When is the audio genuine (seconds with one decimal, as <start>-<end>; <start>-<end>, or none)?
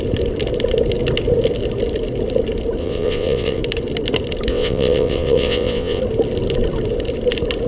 0.0-2.8; 3.6-4.5; 6.0-7.7